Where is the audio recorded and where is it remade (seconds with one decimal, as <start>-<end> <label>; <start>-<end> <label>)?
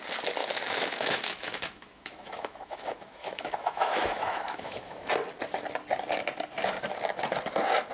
0.0-0.4 recorded; 0.4-5.1 remade; 5.1-7.9 recorded